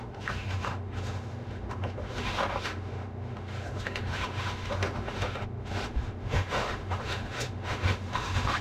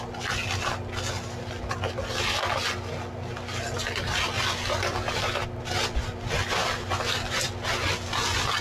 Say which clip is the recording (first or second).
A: second